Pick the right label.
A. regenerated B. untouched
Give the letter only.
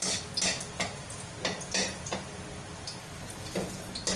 B